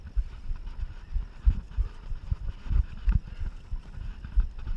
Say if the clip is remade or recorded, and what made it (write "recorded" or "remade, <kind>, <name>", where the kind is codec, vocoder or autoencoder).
recorded